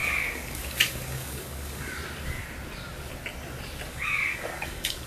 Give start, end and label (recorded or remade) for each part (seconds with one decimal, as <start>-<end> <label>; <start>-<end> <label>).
0.0-2.0 remade; 2.0-3.9 recorded; 3.9-5.1 remade